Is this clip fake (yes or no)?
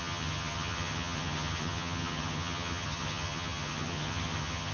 yes